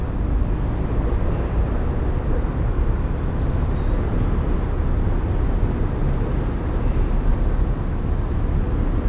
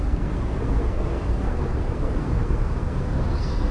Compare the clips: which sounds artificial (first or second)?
second